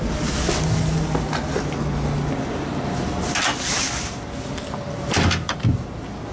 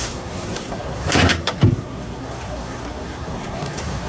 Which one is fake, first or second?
second